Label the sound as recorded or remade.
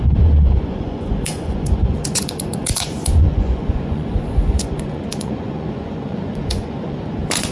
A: remade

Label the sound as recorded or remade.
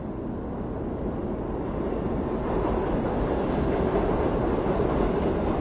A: recorded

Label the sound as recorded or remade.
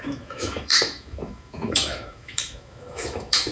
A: remade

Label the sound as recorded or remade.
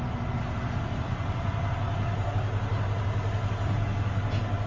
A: recorded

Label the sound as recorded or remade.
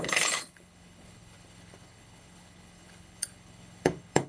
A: remade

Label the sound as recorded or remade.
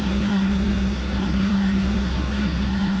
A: remade